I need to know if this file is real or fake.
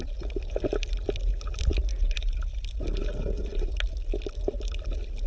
real